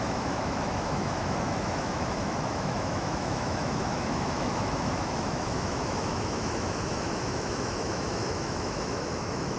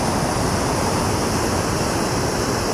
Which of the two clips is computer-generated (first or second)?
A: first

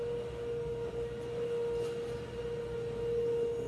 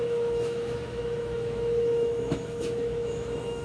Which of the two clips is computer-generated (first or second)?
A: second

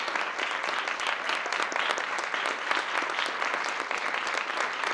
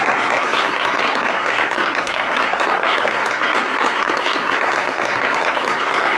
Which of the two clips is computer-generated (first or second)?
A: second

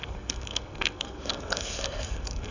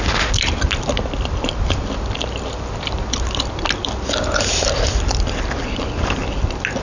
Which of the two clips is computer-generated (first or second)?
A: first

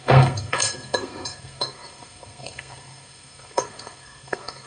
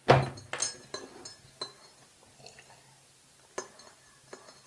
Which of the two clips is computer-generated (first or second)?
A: first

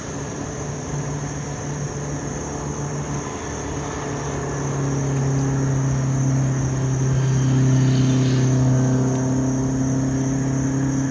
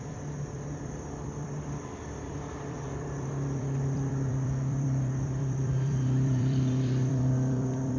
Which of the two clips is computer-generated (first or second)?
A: second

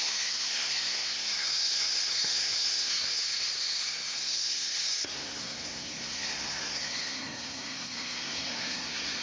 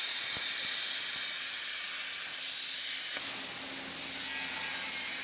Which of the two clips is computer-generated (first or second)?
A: first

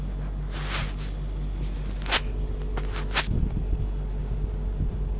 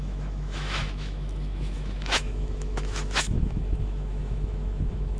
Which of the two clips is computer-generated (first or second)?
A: second